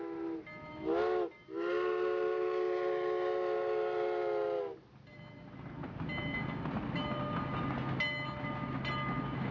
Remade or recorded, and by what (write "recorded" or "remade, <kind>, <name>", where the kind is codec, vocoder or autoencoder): recorded